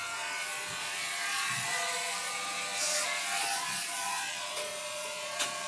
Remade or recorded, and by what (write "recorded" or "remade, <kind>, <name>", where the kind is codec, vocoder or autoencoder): remade, vocoder, Vocos